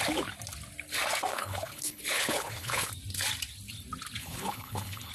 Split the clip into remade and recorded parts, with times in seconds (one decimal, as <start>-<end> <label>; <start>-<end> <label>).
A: 0.0-1.3 recorded; 1.3-2.9 remade; 2.9-4.2 recorded; 4.2-5.1 remade